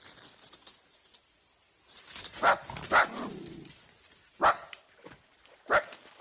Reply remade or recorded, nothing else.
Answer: recorded